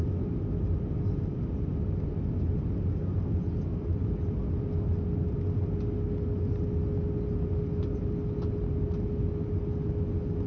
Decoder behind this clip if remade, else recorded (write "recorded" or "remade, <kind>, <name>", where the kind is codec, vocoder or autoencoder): recorded